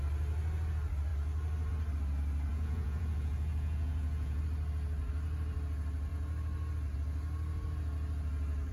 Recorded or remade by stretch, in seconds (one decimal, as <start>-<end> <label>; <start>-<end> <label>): 0.0-2.5 recorded; 2.5-4.4 remade; 4.4-8.7 recorded